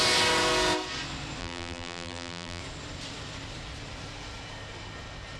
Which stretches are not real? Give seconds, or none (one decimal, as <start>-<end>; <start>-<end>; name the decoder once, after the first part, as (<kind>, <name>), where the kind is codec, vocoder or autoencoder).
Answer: 1.4-2.6 (vocoder, BigVGAN v2)